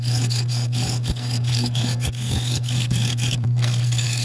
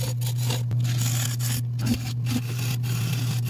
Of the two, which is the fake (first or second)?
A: first